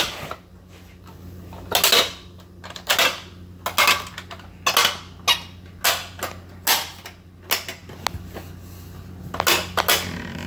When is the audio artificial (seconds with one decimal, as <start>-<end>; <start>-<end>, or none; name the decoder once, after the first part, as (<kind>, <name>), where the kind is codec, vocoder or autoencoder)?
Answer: none